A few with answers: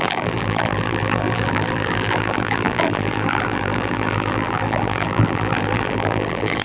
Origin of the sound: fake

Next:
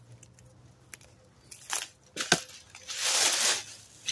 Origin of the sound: real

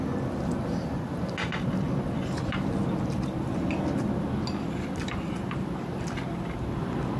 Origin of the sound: real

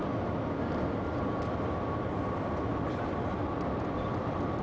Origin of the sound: real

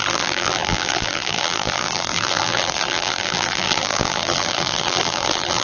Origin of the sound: fake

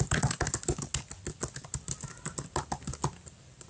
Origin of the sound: real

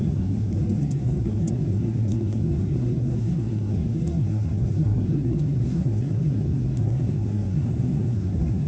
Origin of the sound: fake